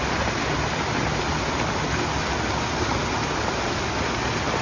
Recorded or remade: recorded